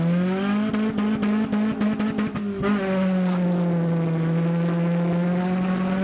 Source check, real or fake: real